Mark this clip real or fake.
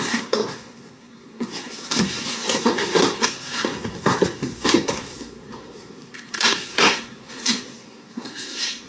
fake